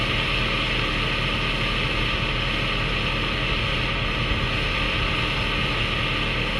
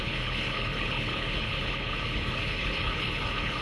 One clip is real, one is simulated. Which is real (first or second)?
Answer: first